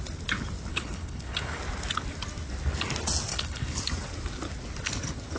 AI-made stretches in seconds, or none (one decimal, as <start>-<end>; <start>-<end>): 0.7-1.6; 3.3-3.8

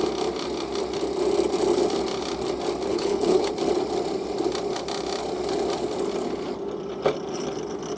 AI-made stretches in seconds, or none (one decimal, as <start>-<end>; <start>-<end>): 2.9-3.5

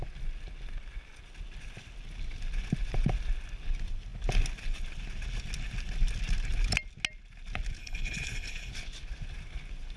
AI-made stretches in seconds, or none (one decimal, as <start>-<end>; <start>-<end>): 7.8-8.7

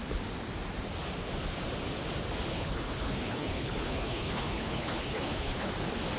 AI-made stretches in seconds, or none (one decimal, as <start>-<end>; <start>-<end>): 2.5-5.7

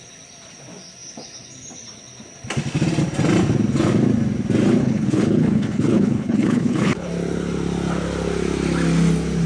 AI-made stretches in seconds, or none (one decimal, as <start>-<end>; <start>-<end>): 4.8-7.1